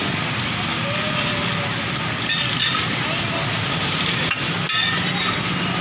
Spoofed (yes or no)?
no